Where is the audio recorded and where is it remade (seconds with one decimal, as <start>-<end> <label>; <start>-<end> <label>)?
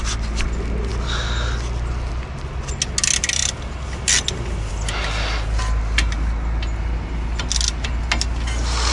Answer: 0.0-8.9 recorded